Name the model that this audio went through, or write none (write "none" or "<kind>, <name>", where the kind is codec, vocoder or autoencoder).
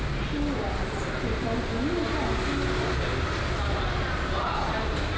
none